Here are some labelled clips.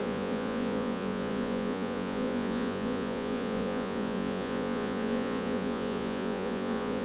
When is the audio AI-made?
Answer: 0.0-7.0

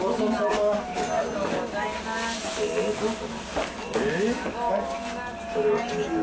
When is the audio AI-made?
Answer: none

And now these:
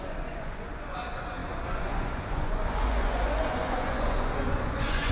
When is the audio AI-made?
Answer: 0.0-5.1

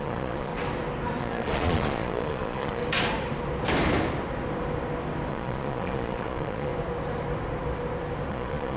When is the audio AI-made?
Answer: 0.0-0.5; 1.2-2.8; 5.3-6.7; 8.3-8.8

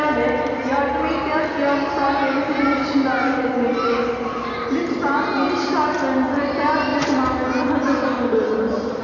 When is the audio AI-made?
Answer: none

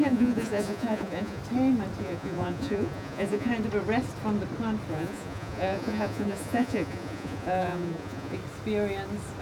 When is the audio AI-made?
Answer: 0.0-1.4; 2.0-3.5; 4.9-8.4